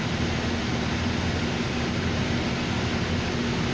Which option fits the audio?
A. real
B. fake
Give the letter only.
A